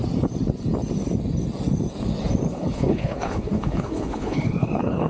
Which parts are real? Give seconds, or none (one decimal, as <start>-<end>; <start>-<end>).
0.0-2.5